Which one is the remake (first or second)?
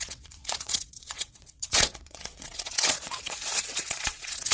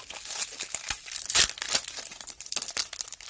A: first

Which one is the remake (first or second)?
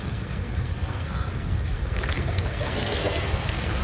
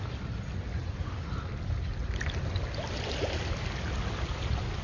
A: first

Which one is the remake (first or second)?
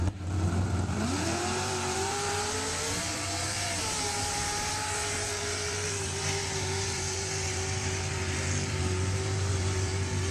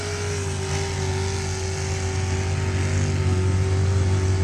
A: first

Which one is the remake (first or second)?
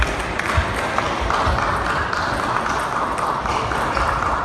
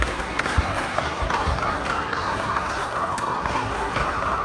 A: second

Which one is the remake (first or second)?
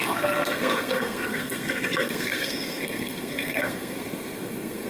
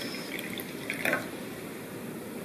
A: first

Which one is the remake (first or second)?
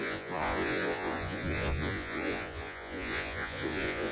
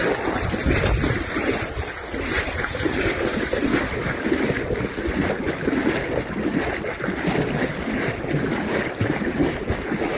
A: first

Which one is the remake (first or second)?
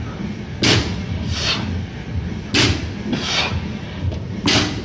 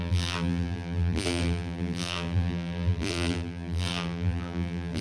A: second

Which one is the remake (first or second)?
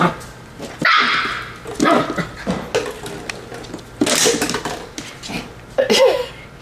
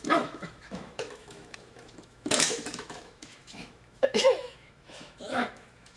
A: second